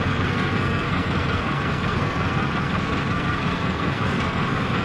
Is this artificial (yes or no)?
yes